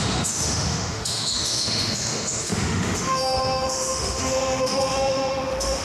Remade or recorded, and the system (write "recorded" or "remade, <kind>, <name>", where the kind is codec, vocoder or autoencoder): remade, autoencoder, DAC-VAE